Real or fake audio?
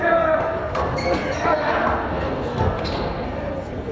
fake